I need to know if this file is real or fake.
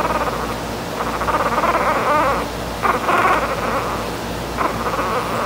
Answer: real